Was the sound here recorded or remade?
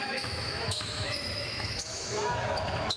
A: remade